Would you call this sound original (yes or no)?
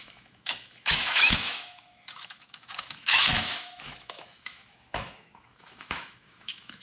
no